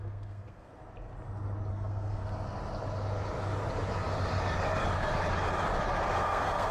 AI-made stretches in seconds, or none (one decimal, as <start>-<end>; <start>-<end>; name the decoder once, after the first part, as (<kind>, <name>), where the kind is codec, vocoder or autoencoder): 0.0-0.7 (codec, SNAC); 1.7-2.2; 6.2-6.7